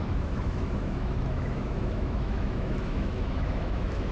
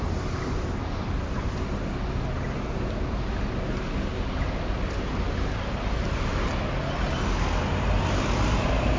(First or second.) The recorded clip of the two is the second